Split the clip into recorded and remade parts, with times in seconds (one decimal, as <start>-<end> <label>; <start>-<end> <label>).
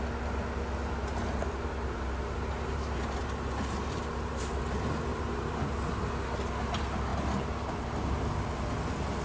0.0-1.4 recorded; 1.4-4.5 remade; 4.5-5.1 recorded; 5.1-5.6 remade; 5.6-7.1 recorded; 7.1-7.7 remade; 7.7-9.2 recorded